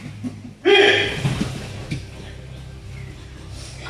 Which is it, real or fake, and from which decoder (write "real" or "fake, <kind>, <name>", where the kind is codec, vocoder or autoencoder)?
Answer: fake, vocoder, BigVGAN v2